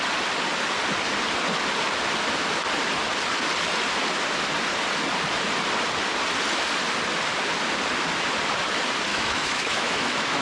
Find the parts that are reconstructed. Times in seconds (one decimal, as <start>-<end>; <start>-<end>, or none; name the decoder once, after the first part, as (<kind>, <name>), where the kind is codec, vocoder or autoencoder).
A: 9.1-10.4 (autoencoder, DAC-VAE)

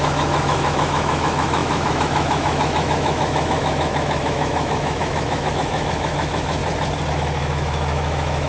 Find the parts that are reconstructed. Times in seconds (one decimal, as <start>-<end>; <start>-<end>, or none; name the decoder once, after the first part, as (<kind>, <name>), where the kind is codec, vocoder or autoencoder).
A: 0.0-6.6 (autoencoder, DAC-VAE); 7.1-8.5

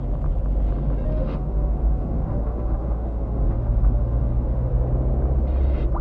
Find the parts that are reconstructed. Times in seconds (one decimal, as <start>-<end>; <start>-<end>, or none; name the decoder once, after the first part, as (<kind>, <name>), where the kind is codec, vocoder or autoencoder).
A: 1.1-4.7 (autoencoder, DAC-VAE)

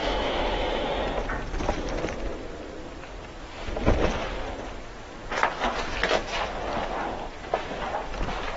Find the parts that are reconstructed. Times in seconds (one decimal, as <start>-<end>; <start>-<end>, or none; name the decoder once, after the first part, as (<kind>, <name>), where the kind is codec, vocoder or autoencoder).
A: 0.0-0.9 (autoencoder, DAC-VAE)

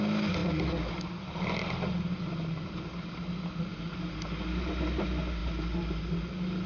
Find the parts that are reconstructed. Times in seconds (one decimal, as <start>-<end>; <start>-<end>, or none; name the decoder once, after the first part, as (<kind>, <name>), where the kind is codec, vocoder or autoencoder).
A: none

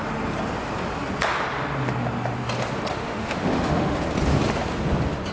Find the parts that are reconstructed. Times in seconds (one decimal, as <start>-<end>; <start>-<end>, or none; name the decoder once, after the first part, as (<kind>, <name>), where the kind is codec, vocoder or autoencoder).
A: 2.9-4.0 (autoencoder, DAC-VAE)

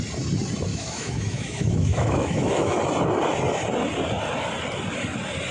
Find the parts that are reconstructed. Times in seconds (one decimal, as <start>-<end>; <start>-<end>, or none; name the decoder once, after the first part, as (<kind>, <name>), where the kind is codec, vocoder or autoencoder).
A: 0.7-2.8 (autoencoder, DAC-VAE)

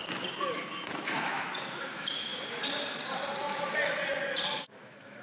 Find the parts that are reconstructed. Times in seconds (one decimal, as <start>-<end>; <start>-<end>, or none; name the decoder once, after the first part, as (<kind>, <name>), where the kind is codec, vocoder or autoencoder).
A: 0.6-2.3 (autoencoder, DAC-VAE); 4.5-5.2